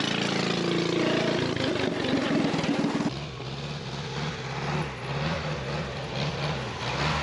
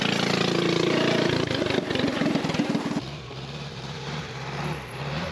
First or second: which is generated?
second